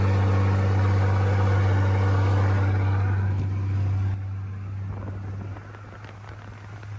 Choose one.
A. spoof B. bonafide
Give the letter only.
B